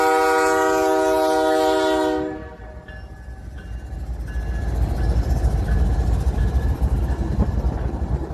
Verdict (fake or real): real